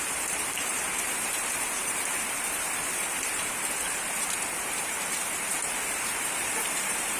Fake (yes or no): yes